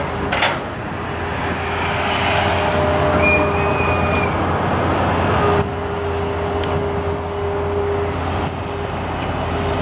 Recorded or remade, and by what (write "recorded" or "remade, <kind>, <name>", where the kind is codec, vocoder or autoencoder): recorded